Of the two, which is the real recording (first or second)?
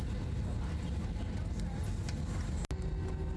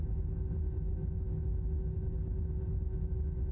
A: first